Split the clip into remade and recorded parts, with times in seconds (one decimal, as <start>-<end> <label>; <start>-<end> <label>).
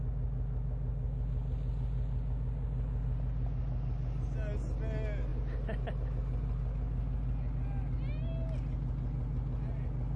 0.0-10.2 recorded